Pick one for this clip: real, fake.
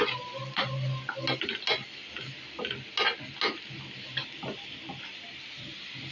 real